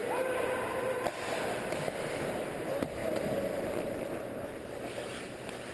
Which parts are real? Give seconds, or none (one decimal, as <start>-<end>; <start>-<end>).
0.0-5.7